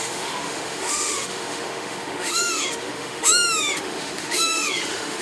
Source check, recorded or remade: remade